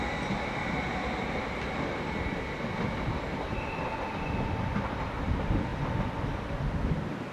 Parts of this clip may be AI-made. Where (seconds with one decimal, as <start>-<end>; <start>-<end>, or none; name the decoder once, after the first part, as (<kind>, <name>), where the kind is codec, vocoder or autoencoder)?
none